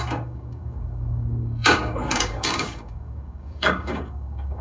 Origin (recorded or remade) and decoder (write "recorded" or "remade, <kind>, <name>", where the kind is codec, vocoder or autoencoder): remade, codec, DAC